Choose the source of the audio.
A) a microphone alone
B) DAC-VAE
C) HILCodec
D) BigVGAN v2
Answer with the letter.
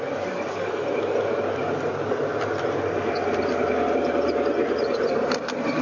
A